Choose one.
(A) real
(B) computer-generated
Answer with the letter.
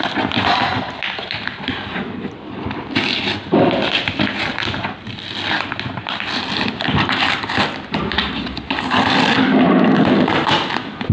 B